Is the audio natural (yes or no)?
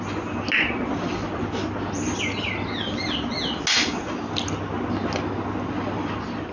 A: yes